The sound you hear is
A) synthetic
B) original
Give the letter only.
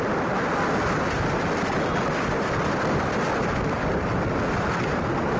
B